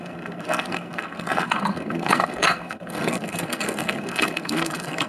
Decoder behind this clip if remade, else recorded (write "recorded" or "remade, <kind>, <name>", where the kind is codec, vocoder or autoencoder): remade, codec, SNAC